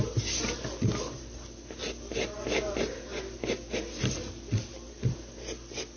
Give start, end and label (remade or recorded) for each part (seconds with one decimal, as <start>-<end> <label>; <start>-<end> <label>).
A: 0.0-6.0 recorded